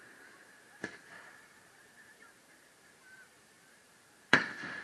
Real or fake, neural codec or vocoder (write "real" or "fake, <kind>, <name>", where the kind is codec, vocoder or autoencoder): fake, vocoder, BigVGAN v2